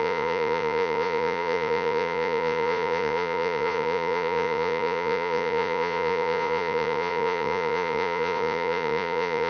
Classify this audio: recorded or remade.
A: remade